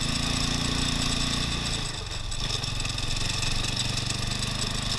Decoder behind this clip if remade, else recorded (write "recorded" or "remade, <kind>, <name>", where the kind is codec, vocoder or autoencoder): recorded